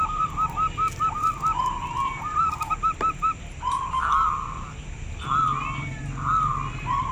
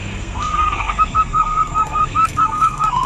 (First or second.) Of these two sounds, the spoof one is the second